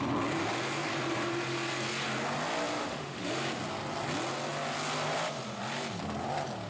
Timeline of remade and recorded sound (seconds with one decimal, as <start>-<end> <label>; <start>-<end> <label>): 0.0-2.8 recorded; 2.8-3.3 remade; 3.3-6.7 recorded